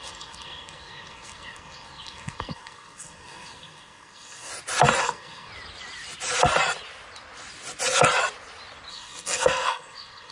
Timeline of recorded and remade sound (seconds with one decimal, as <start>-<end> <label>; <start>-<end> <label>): 0.0-4.5 remade; 4.5-5.0 recorded; 5.0-5.5 remade; 5.5-8.9 recorded; 8.9-10.3 remade